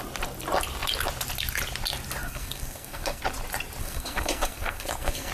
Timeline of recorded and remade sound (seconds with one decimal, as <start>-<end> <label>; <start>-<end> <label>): 0.0-2.2 recorded; 2.2-3.2 remade; 3.2-3.8 recorded; 3.8-5.3 remade